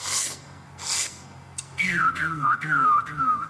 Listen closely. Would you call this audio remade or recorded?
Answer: remade